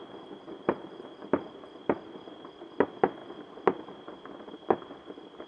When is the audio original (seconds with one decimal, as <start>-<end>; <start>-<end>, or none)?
0.0-5.5